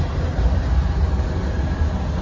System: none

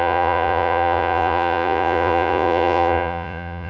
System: vocoder, Vocos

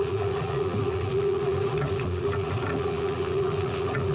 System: vocoder, Vocos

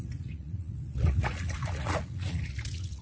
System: vocoder, Vocos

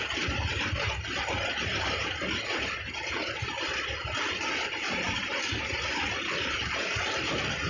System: none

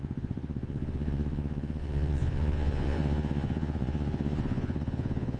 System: vocoder, Vocos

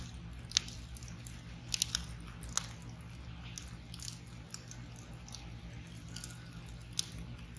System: none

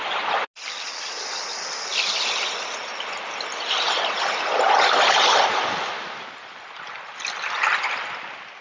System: none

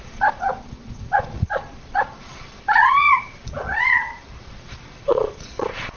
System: vocoder, Vocos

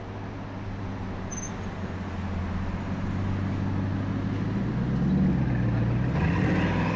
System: none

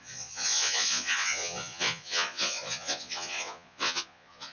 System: vocoder, Vocos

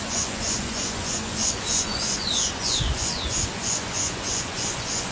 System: vocoder, Vocos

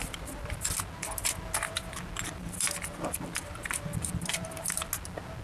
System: none